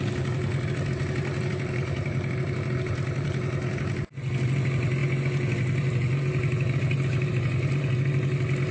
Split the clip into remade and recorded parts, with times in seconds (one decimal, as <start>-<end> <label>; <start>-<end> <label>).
0.0-8.7 recorded